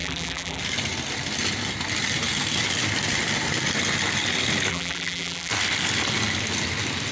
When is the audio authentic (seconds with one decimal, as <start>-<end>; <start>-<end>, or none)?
0.6-4.7; 5.5-7.1